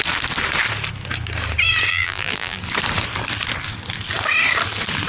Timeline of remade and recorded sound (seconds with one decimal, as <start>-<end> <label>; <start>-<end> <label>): 0.0-1.9 recorded; 1.9-2.6 remade; 2.6-5.1 recorded